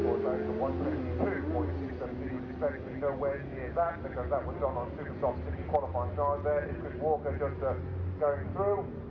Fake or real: real